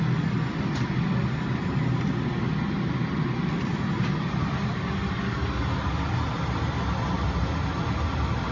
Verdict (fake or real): real